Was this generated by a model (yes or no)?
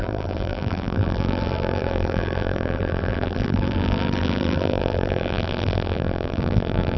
yes